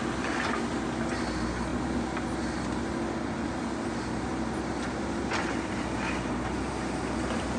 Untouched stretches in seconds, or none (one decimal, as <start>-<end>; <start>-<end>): 0.0-7.6